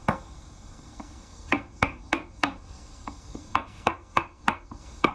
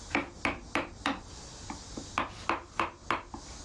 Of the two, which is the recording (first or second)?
second